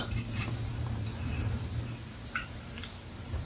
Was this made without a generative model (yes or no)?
no